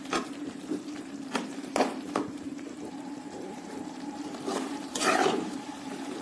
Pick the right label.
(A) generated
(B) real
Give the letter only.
A